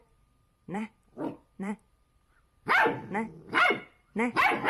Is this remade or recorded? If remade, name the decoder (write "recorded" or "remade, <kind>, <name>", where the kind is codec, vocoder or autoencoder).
remade, vocoder, BigVGAN v2